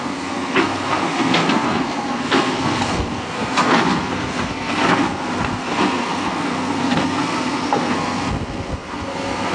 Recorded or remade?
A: remade